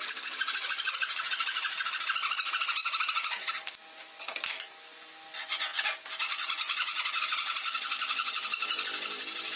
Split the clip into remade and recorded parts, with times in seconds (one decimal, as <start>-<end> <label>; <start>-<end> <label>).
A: 0.0-2.8 recorded; 2.8-5.0 remade; 5.0-9.6 recorded